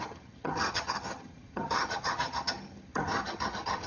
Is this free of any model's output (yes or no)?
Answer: no